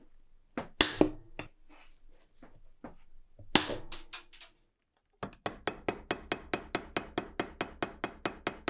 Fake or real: real